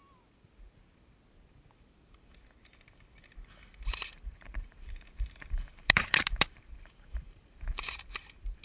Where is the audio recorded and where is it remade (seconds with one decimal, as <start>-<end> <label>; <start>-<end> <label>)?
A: 0.0-4.1 recorded; 4.1-8.0 remade; 8.0-8.6 recorded